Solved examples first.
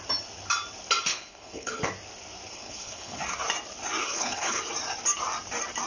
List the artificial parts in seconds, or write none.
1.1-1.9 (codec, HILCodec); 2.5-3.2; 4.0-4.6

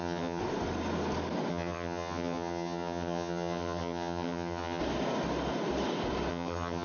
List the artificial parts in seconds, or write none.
0.0-0.4 (vocoder, HiFi-GAN); 1.5-4.8; 6.3-6.8

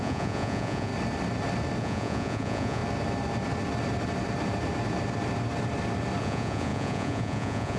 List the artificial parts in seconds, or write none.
0.0-0.9 (vocoder, Vocos); 1.8-2.8; 6.2-7.8

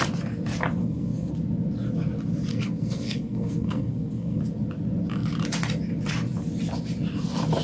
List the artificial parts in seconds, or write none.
0.8-1.3 (codec, SNAC); 2.5-4.4

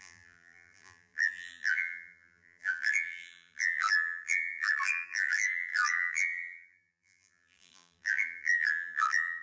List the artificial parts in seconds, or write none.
0.0-9.4 (vocoder, BigVGAN v2)

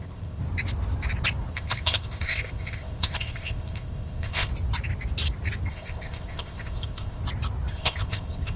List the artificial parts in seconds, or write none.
0.0-0.4 (codec, ZipCodec); 1.5-4.5; 5.7-7.2; 7.7-8.6

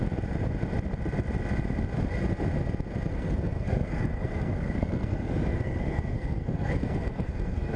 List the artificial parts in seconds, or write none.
3.1-7.8 (codec, SNAC)

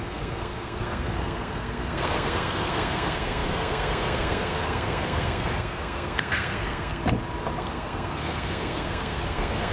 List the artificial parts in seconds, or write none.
0.0-7.0 (codec, SNAC); 7.6-9.7